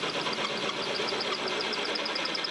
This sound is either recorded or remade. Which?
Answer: recorded